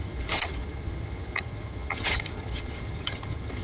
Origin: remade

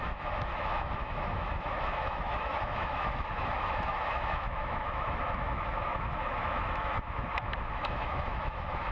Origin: remade